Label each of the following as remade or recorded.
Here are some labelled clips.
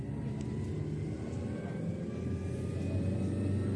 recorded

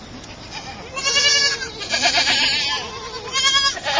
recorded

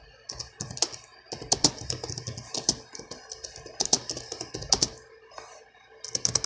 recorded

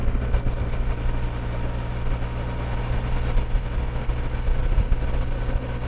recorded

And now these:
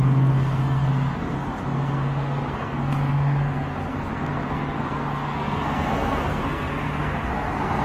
remade